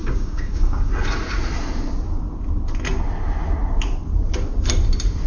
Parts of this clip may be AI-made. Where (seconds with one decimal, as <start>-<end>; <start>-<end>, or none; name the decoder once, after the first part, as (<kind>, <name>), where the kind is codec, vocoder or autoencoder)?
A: 0.0-0.9 (codec, DAC)